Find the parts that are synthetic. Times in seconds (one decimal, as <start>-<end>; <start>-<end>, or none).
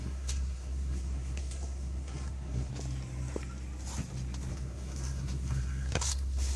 0.0-2.7; 4.5-6.6